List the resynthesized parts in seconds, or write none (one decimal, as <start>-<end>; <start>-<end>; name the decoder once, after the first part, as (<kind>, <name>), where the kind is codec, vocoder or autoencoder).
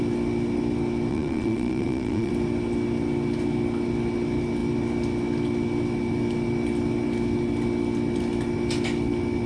1.1-2.3 (vocoder, Vocos)